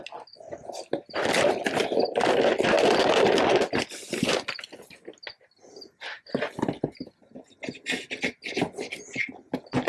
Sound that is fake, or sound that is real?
real